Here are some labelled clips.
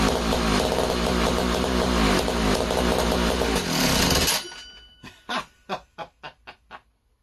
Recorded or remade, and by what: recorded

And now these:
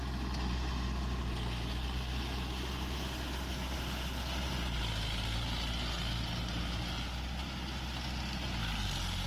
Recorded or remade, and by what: recorded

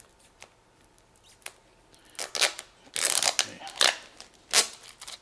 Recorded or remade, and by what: recorded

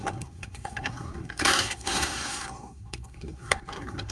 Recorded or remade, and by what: remade, codec, SNAC